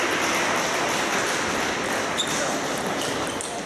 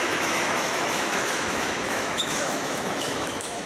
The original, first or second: first